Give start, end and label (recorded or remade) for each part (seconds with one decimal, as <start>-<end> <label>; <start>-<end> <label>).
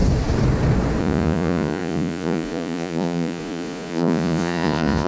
0.0-1.0 recorded; 1.0-5.1 remade